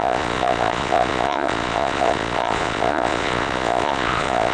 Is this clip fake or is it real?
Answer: fake